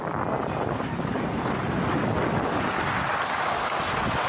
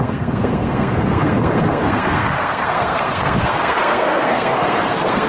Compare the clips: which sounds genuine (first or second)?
first